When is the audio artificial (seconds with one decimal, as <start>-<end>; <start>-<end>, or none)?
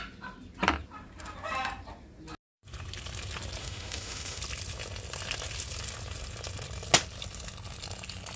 3.6-4.4